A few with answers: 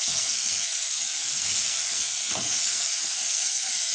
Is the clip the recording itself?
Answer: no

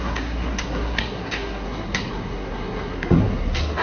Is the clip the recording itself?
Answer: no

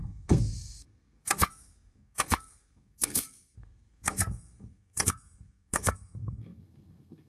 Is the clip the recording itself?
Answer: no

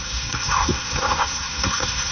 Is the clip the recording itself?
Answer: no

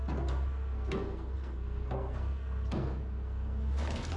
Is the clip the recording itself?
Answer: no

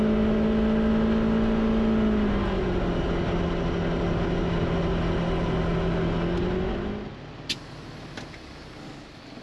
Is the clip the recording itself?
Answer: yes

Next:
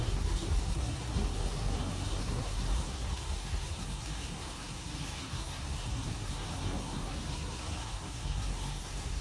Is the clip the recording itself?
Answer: no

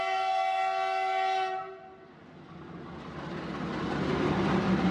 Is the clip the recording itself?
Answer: yes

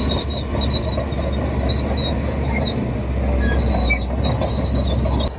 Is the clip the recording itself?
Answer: yes